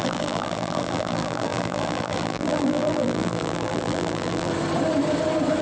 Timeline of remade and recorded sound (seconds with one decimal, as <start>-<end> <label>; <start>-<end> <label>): 0.0-4.5 remade; 4.5-5.6 recorded